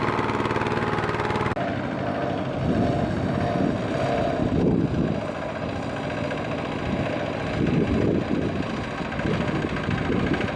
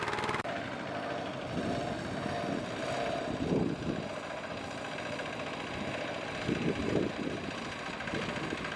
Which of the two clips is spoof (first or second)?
second